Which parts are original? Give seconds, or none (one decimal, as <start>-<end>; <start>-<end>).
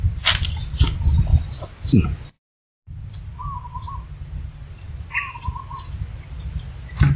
0.0-7.2